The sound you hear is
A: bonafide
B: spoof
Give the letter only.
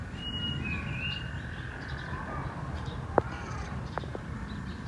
A